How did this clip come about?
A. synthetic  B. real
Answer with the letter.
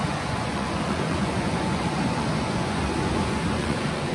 A